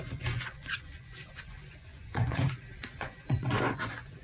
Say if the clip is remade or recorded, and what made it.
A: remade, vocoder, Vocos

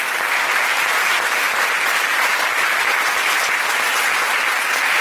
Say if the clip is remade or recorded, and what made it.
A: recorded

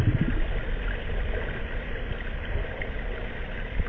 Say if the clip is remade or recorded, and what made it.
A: recorded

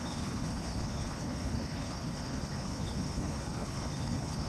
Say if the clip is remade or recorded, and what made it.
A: remade, codec, HILCodec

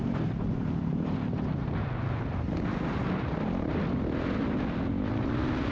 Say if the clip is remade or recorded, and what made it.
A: recorded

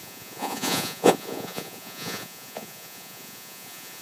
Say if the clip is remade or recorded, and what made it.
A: remade, vocoder, Vocos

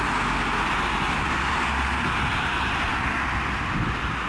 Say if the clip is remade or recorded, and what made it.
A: recorded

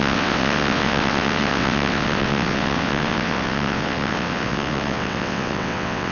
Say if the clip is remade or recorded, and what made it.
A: remade, vocoder, WaveNeXt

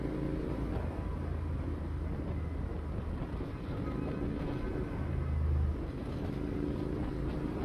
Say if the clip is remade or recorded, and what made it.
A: recorded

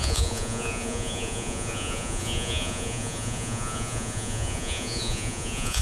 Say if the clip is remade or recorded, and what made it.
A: remade, vocoder, Vocos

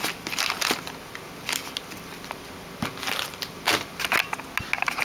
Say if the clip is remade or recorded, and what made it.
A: recorded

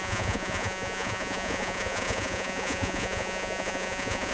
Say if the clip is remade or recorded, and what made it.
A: remade, vocoder, Vocos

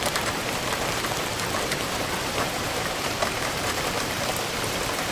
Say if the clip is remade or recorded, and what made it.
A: remade, vocoder, BigVGAN v2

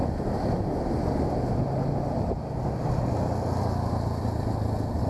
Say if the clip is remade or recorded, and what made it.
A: recorded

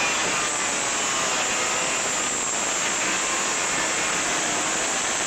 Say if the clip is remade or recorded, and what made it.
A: recorded